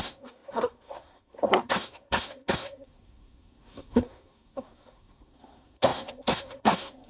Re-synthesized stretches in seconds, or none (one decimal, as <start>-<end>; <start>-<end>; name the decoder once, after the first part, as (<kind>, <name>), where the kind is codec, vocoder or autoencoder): 0.0-7.1 (codec, SNAC)